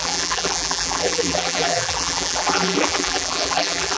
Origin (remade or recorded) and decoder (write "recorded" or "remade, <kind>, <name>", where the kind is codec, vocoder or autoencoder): remade, vocoder, BigVGAN v2